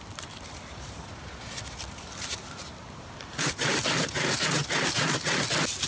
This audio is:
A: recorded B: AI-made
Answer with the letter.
B